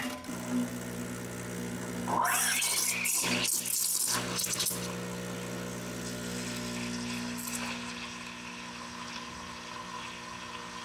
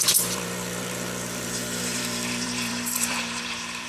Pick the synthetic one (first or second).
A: second